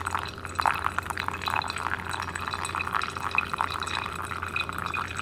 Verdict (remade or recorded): recorded